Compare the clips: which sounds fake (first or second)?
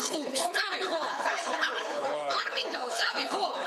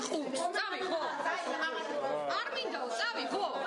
first